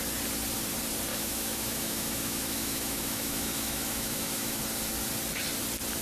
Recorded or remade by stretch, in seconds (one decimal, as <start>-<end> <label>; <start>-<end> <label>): 0.0-1.1 recorded; 1.1-4.6 remade; 4.6-6.0 recorded